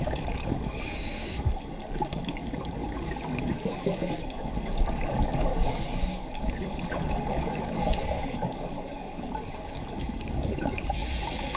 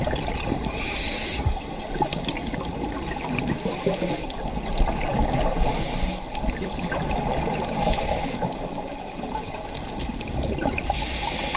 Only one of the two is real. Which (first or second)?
second